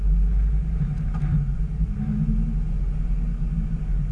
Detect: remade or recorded recorded